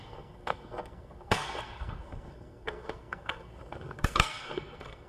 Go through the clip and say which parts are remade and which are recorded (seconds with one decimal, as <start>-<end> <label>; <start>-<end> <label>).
0.0-5.1 remade